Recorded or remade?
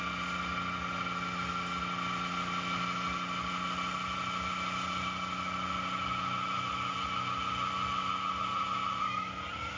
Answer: recorded